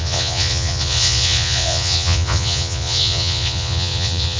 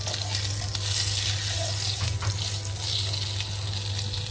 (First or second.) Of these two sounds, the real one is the second